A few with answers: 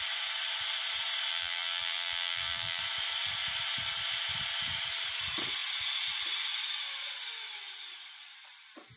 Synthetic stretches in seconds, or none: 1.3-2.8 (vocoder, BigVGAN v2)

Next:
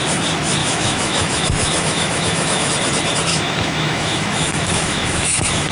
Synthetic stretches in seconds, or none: 0.6-2.7 (autoencoder, DAC-VAE); 3.3-5.7